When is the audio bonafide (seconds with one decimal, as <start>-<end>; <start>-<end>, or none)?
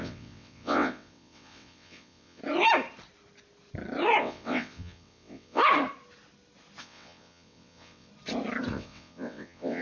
2.4-4.2; 5.6-6.8; 8.1-8.7